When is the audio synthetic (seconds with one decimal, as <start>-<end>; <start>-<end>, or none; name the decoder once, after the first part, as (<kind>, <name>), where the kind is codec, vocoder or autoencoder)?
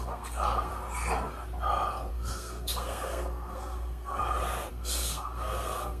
0.0-0.7 (codec, SNAC); 2.1-4.2; 4.7-6.0